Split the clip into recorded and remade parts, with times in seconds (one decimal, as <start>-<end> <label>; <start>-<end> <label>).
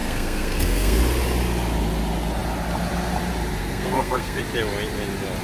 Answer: 0.0-1.0 remade; 1.0-3.6 recorded; 3.6-4.4 remade; 4.4-5.4 recorded